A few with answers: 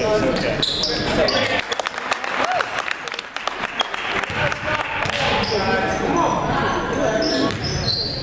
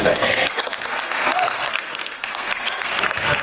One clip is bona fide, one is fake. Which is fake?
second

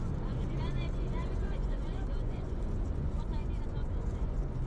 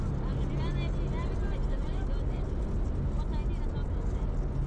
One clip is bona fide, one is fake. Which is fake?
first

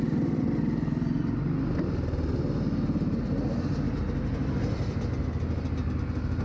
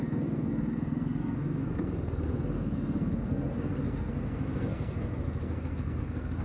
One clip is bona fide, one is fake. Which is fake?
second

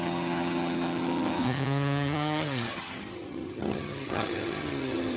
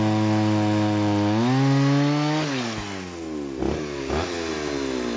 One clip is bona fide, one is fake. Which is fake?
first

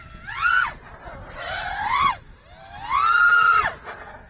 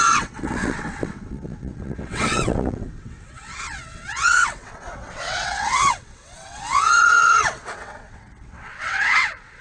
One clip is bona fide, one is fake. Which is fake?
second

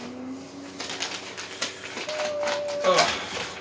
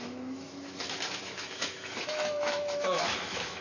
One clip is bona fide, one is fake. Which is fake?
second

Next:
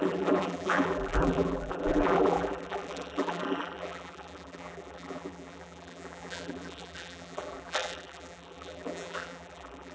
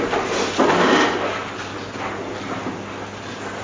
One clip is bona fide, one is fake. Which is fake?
first